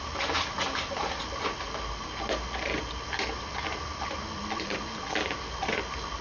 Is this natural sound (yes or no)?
yes